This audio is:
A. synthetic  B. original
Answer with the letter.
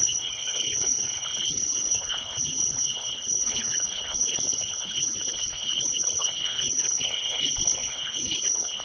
A